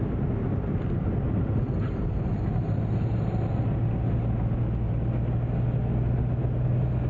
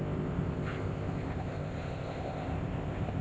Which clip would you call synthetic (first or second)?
second